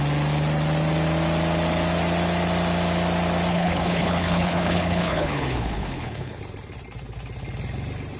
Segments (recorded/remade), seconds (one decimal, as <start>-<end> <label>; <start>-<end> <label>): 0.0-3.5 recorded; 3.5-6.4 remade; 6.4-8.2 recorded